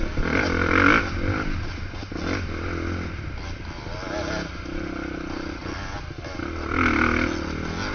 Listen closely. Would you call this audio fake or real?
real